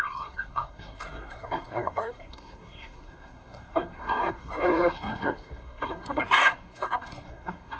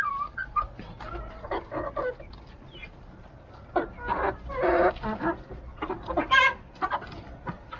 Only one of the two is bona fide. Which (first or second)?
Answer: second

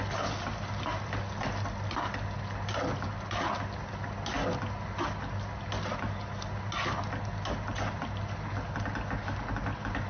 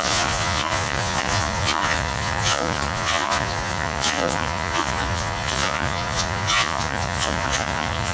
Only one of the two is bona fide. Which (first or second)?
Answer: first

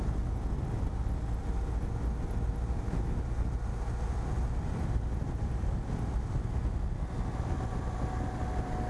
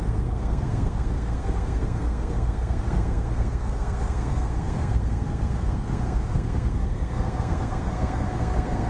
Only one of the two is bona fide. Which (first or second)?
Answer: first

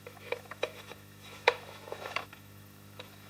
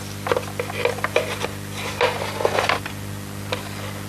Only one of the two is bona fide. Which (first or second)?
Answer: second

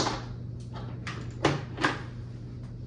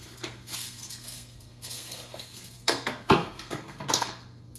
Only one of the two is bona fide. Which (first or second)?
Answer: first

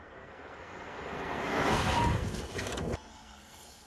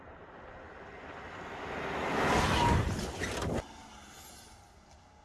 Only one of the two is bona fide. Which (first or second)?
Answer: second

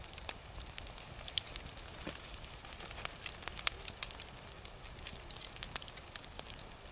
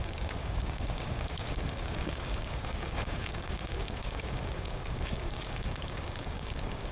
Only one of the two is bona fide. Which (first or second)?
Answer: first